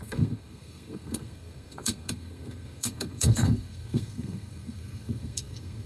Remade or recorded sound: remade